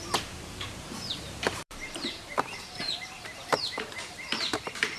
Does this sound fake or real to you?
fake